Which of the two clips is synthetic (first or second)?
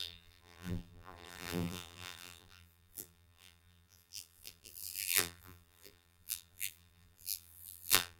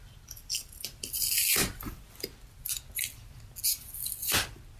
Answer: first